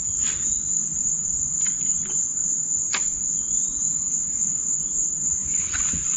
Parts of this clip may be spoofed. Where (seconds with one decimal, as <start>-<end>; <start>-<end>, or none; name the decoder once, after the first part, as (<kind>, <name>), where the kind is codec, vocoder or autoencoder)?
1.0-1.9 (vocoder, BigVGAN v2); 2.4-3.4